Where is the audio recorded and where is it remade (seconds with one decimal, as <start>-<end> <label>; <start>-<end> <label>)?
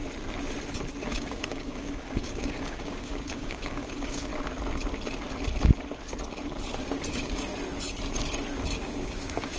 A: 0.0-1.1 recorded; 1.1-4.3 remade; 4.3-7.1 recorded; 7.1-7.5 remade; 7.5-8.8 recorded; 8.8-9.6 remade